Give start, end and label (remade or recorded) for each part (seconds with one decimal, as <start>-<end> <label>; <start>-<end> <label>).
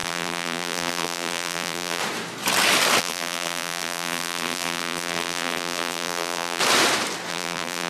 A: 0.0-2.0 remade; 2.0-3.0 recorded; 3.0-6.6 remade; 6.6-7.3 recorded; 7.3-7.9 remade